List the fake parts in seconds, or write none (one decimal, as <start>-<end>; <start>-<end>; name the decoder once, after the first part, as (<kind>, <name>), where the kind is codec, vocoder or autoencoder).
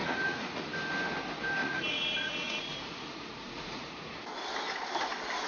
0.0-0.6 (vocoder, Vocos); 1.6-4.2